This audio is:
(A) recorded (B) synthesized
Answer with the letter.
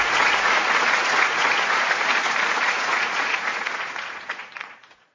B